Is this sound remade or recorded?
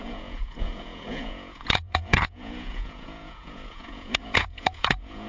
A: remade